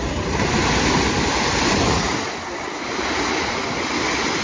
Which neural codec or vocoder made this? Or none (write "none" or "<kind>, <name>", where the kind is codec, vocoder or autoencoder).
none